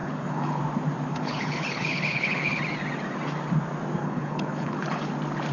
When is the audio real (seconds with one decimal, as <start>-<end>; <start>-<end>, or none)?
0.6-1.1; 2.6-4.0; 5.1-5.5